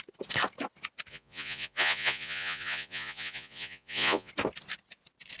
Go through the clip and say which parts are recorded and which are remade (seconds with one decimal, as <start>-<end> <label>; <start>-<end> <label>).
0.0-1.1 recorded; 1.1-4.3 remade; 4.3-5.4 recorded